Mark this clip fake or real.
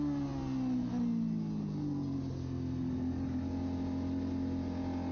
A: real